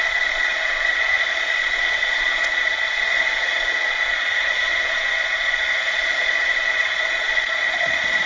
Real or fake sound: fake